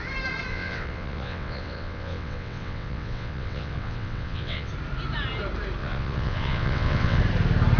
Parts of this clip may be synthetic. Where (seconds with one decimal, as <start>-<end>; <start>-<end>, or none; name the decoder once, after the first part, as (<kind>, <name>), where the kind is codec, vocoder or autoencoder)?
0.5-4.7 (vocoder, WaveNeXt); 5.8-7.2